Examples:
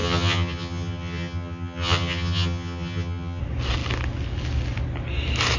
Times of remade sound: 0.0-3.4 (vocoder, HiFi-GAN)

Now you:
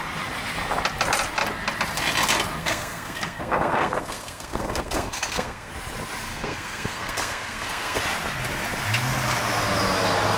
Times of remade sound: 2.6-5.7 (codec, SNAC); 6.3-8.0

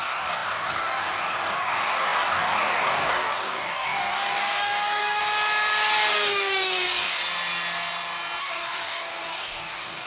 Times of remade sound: 0.0-5.2 (codec, DAC); 6.1-7.2; 8.4-10.1

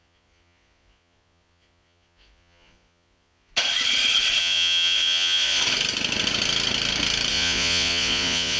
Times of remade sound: 0.0-3.5 (vocoder, Vocos); 4.4-5.6; 7.3-8.6

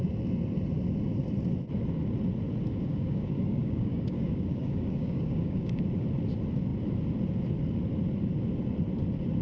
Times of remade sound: 2.7-5.8 (codec, DAC)

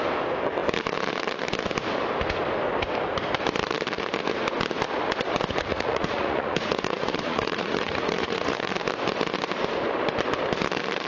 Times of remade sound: 5.7-8.7 (vocoder, Vocos)